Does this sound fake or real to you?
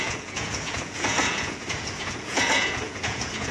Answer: fake